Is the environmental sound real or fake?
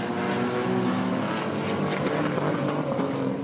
real